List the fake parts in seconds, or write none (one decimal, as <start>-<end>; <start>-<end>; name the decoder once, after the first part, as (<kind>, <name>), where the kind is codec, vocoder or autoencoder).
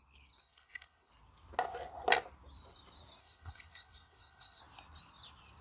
0.4-1.1 (codec, HILCodec); 3.2-4.6